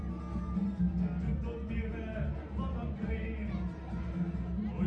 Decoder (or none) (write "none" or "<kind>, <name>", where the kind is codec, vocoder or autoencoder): none